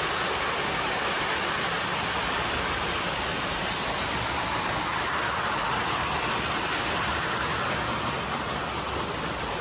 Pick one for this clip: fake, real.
real